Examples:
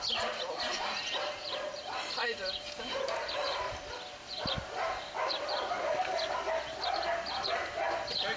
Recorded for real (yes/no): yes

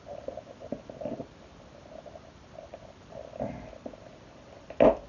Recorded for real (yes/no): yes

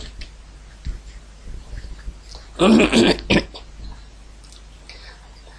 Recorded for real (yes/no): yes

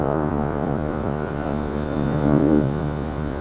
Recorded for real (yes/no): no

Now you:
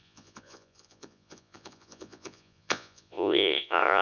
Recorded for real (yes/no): no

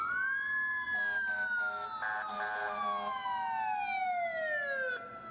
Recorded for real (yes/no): yes